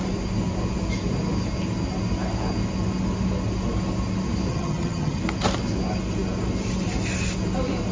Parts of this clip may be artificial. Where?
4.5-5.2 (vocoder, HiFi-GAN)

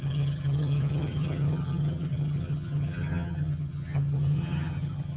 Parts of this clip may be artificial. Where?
0.0-5.2 (vocoder, HiFi-GAN)

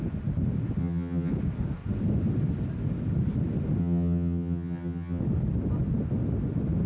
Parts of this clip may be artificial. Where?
0.8-1.3 (vocoder, HiFi-GAN); 3.8-5.2

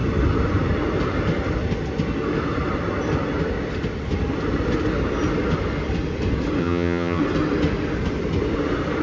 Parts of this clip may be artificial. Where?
6.6-7.2 (vocoder, HiFi-GAN)